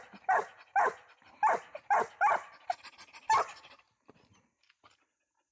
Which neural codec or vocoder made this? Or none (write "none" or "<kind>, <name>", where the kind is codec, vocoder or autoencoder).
none